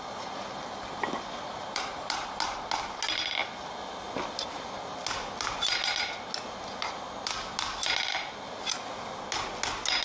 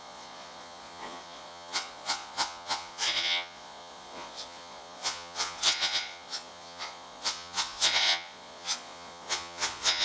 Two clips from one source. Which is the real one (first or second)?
first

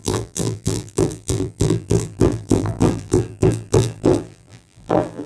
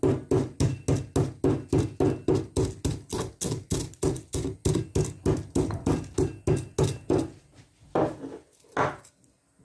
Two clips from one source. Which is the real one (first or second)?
second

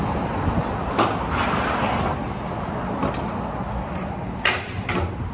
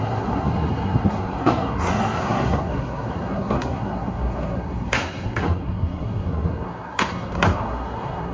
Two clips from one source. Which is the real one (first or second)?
first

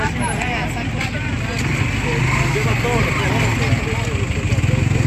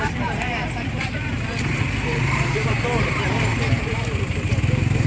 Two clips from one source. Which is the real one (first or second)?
first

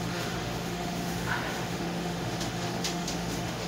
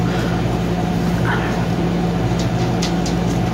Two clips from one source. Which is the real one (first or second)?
second